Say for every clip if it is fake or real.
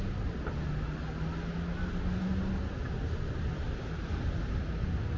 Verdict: real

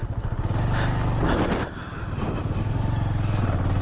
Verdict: real